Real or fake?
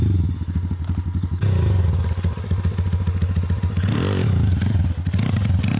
real